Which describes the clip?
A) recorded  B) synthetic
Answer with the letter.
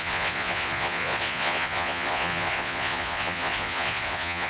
B